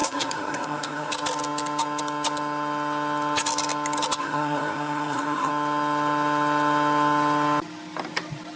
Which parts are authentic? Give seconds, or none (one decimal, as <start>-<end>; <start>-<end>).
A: 1.1-4.2; 5.5-8.6